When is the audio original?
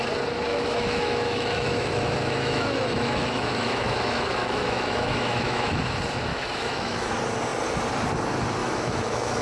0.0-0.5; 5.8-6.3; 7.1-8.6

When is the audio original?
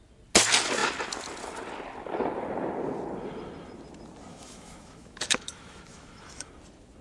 0.0-4.3; 6.5-7.0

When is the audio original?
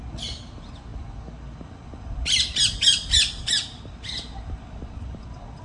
0.0-5.6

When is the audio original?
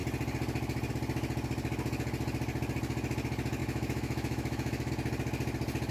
0.0-3.6; 4.9-5.9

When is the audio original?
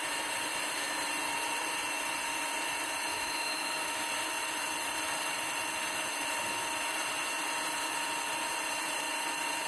0.0-3.1; 3.9-9.7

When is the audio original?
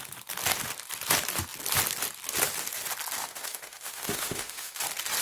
0.0-3.2; 4.8-5.2